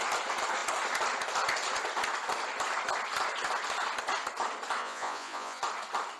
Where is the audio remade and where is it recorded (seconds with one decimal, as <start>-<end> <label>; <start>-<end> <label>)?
0.0-4.8 recorded; 4.8-5.6 remade; 5.6-6.2 recorded